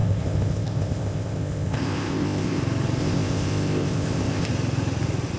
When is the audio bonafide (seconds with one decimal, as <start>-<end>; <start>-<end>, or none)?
2.6-3.0; 4.5-5.4